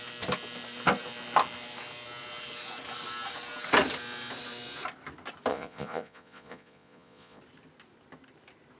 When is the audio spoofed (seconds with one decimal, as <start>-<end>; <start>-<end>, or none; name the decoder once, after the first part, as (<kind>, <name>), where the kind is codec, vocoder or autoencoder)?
5.5-7.4 (vocoder, Vocos)